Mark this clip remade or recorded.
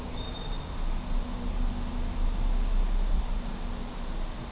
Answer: recorded